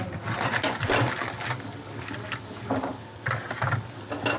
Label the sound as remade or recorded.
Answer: recorded